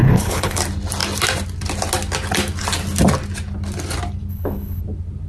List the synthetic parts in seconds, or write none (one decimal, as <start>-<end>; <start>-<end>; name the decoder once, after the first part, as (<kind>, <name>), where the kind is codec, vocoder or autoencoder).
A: 0.0-0.6 (codec, HILCodec); 4.3-4.8